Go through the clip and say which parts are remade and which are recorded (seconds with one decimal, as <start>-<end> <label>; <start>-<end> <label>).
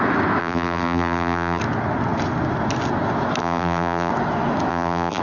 0.0-0.4 recorded; 0.4-1.6 remade; 1.6-3.4 recorded; 3.4-4.1 remade; 4.1-4.7 recorded; 4.7-5.2 remade